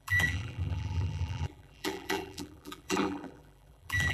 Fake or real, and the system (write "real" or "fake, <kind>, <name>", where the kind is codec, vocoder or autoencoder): fake, vocoder, BigVGAN v2